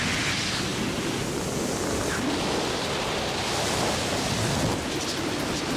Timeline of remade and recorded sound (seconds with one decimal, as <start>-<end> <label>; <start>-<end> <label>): 0.0-5.8 recorded